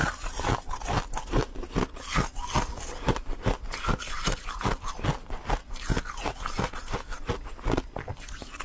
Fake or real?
real